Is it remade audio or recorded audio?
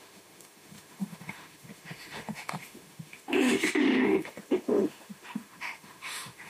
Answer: remade